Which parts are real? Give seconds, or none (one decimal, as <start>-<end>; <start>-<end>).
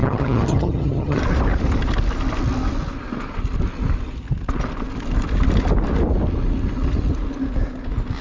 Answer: 1.2-8.2